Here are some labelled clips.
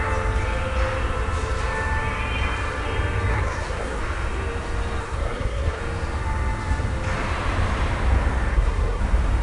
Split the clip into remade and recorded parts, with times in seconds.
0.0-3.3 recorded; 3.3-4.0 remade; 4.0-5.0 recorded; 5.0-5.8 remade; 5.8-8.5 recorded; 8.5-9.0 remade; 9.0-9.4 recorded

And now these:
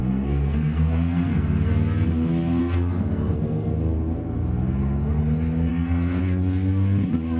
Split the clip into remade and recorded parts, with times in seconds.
0.0-1.7 remade; 1.7-2.6 recorded; 2.6-3.7 remade; 3.7-5.7 recorded; 5.7-6.2 remade; 6.2-7.4 recorded

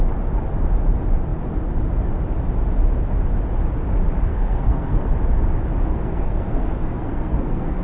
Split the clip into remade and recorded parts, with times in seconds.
0.0-4.3 recorded; 4.3-5.2 remade; 5.2-5.9 recorded; 5.9-7.8 remade